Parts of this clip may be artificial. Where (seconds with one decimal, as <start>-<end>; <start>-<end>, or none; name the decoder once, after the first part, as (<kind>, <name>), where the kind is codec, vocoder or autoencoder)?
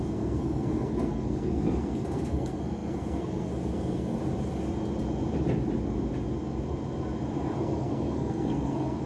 0.0-4.2 (codec, SNAC); 7.6-9.1